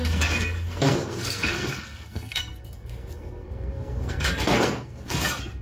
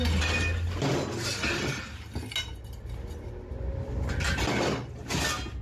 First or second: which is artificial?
first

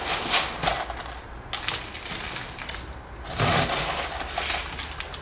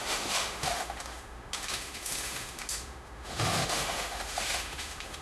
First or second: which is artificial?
second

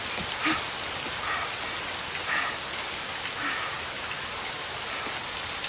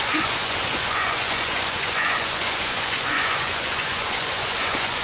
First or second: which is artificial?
second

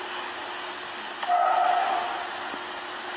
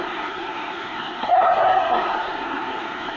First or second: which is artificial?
second